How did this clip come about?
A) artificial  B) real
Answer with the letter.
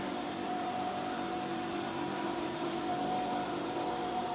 A